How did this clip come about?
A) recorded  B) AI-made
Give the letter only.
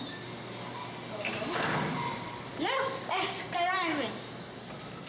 A